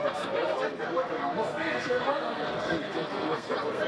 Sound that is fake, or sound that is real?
fake